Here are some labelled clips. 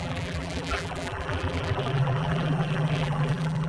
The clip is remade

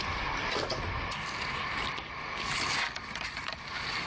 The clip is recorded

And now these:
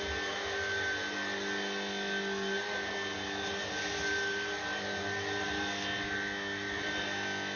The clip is recorded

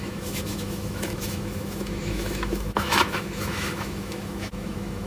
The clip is remade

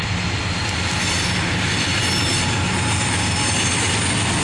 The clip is recorded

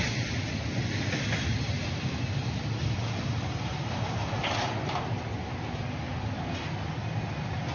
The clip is recorded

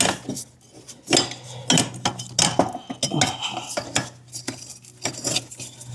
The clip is recorded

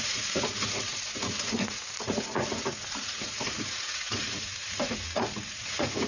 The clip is remade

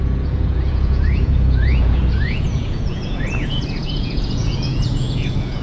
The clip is remade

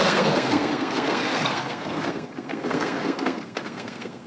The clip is remade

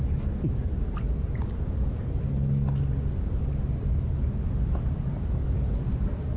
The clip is recorded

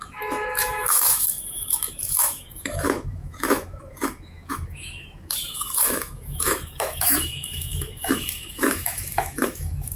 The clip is remade